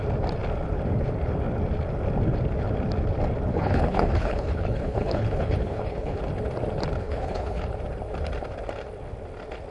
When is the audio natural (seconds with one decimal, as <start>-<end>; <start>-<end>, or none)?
0.0-3.5; 6.2-7.0; 7.6-9.7